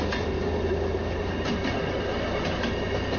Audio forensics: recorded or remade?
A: recorded